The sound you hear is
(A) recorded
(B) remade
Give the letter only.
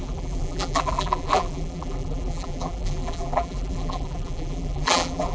B